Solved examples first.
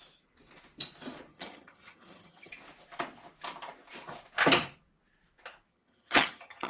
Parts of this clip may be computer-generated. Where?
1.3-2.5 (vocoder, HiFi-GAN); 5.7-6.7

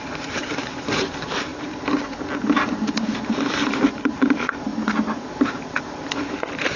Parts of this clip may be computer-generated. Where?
0.0-1.5 (vocoder, BigVGAN v2); 2.4-4.7; 5.3-6.8

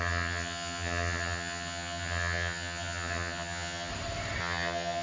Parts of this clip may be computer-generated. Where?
0.0-3.9 (vocoder, HiFi-GAN); 4.4-5.0